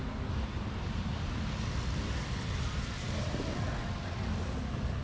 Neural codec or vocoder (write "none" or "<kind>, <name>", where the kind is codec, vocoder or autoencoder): none